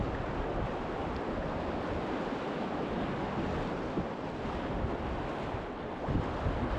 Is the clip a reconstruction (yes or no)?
no